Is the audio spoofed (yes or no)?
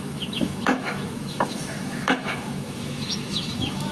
yes